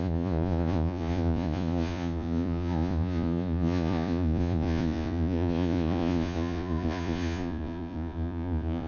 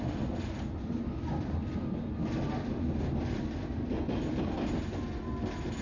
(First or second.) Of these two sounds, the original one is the second